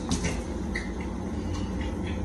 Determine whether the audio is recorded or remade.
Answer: recorded